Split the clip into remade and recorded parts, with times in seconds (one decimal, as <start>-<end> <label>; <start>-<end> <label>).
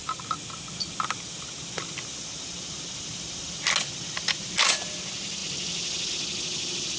0.0-7.0 recorded